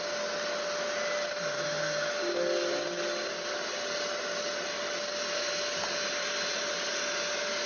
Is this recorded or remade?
recorded